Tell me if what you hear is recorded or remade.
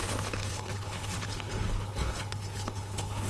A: remade